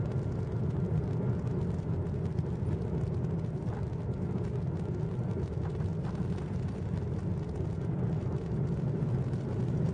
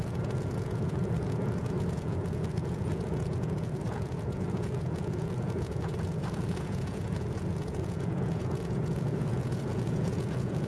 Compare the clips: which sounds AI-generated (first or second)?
second